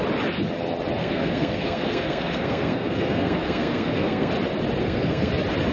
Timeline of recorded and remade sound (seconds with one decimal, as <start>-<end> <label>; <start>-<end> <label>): 0.0-1.0 recorded; 1.0-4.3 remade; 4.3-4.8 recorded; 4.8-5.3 remade; 5.3-5.7 recorded